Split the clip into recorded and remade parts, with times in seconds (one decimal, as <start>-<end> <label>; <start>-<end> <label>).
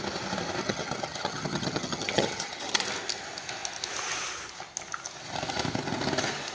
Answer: 0.0-0.6 recorded; 0.6-2.8 remade; 2.8-6.5 recorded